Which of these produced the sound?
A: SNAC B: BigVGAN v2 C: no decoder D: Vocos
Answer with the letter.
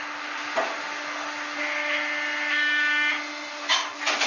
C